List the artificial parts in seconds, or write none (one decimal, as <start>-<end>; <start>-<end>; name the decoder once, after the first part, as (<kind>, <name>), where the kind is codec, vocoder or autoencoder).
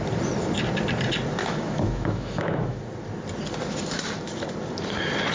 1.4-2.8 (autoencoder, DAC-VAE)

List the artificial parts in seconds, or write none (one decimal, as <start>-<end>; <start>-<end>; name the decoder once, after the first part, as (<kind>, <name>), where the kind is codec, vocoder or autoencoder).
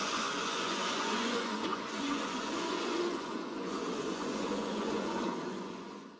0.0-6.2 (vocoder, Vocos)